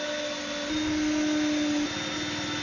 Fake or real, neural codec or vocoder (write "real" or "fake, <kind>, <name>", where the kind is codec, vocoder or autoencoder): real